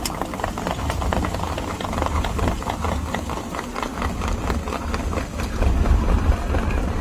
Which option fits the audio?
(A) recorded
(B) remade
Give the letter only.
A